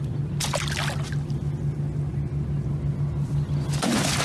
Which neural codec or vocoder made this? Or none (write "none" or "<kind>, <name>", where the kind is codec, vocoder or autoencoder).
none